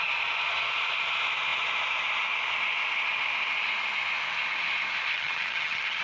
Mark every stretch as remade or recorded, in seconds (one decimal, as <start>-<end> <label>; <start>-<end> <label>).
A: 0.0-5.1 recorded; 5.1-6.0 remade